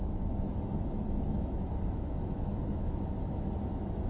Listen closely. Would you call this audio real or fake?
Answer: fake